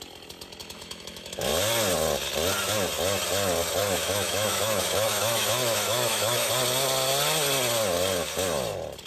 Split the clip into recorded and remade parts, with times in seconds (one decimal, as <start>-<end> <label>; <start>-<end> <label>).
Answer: 0.0-0.6 recorded; 0.6-1.5 remade; 1.5-3.8 recorded; 3.8-6.5 remade; 6.5-9.1 recorded